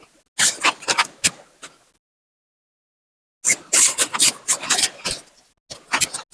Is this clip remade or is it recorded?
recorded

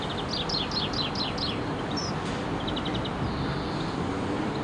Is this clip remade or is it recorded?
recorded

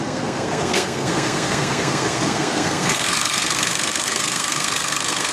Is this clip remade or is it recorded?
remade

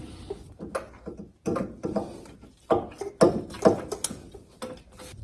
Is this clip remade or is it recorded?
recorded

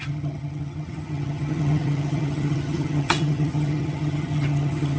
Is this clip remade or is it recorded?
remade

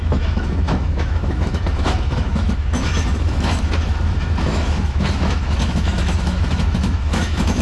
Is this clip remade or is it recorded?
remade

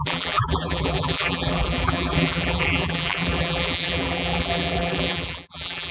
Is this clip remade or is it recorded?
remade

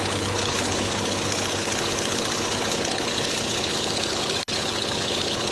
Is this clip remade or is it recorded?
remade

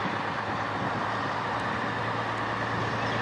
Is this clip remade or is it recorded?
recorded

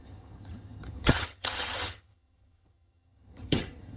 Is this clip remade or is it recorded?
remade